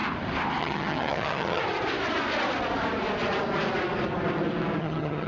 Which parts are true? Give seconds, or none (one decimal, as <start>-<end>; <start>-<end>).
0.0-0.6; 1.6-4.8